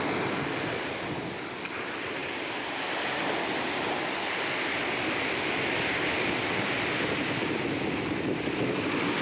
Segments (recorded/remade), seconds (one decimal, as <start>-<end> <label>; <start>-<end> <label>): 0.0-9.2 recorded